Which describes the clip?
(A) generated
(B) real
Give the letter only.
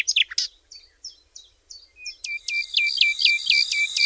B